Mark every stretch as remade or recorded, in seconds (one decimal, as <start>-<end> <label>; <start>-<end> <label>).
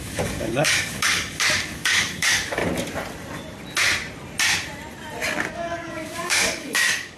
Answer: 0.0-2.6 remade; 2.6-5.5 recorded; 5.5-7.2 remade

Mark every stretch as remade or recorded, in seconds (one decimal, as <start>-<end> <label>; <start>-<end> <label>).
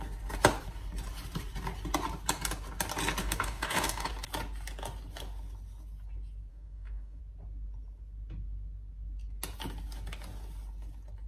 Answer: 0.0-3.2 recorded; 3.2-4.1 remade; 4.1-6.5 recorded; 6.5-7.2 remade; 7.2-11.3 recorded